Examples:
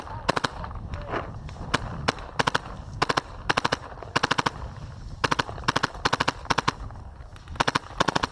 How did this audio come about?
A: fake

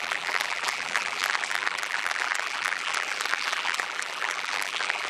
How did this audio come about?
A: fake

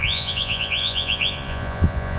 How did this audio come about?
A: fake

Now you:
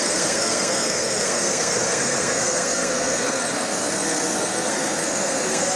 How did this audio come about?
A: fake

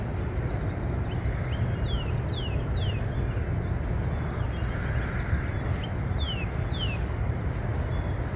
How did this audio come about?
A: real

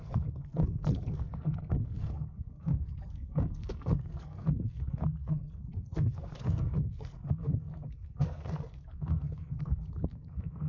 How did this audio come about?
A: fake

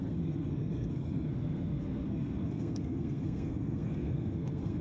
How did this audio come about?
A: fake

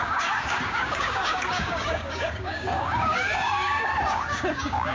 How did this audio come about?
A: fake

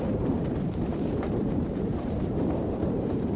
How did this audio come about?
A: fake